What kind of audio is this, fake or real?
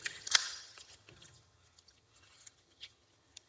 fake